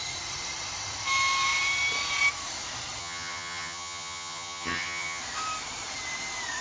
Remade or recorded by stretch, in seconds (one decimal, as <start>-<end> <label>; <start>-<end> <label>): 0.0-3.0 recorded; 3.0-5.2 remade; 5.2-6.6 recorded